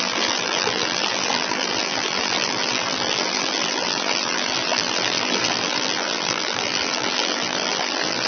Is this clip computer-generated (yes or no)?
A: yes